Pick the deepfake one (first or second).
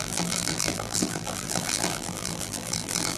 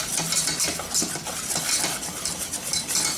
first